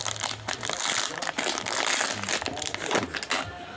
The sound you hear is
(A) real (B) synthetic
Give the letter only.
A